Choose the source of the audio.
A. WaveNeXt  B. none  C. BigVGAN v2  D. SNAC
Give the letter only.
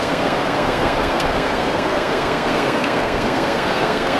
D